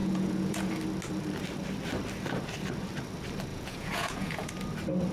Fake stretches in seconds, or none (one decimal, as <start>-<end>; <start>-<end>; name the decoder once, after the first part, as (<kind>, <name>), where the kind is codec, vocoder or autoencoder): 0.0-0.7 (vocoder, Vocos); 3.5-4.5